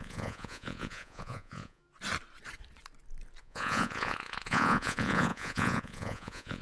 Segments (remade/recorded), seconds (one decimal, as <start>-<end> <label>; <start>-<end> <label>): 0.0-1.8 remade; 1.8-3.4 recorded; 3.4-6.6 remade